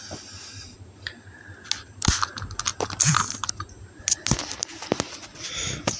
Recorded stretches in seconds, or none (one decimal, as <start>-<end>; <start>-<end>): 0.0-6.0

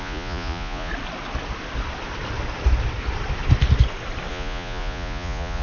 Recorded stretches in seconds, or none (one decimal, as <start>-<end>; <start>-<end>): 0.9-4.3

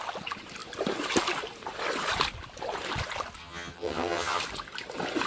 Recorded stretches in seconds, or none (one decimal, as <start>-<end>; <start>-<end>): 0.0-3.4; 4.4-5.3

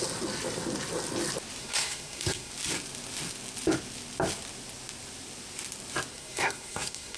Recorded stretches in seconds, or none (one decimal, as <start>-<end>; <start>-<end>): 0.0-1.6; 2.5-6.1

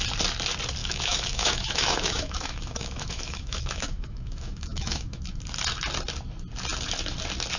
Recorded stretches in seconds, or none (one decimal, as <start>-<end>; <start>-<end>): 0.0-0.8; 5.4-7.6

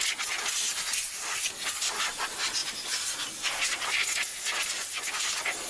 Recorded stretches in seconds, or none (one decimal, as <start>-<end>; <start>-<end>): 0.0-5.7